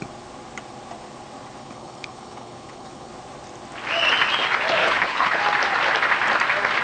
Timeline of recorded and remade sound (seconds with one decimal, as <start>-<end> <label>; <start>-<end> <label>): 0.0-1.6 recorded; 1.6-3.1 remade; 3.1-4.8 recorded; 4.8-5.4 remade; 5.4-6.8 recorded